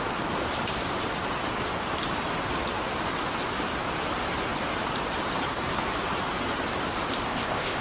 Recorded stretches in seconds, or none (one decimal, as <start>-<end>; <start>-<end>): 0.0-7.2